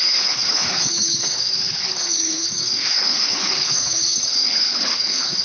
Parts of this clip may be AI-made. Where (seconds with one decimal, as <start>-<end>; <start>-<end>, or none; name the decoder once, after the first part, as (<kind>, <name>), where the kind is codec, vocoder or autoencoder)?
0.0-5.4 (codec, HILCodec)